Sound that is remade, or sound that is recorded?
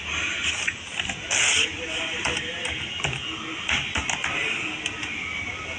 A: recorded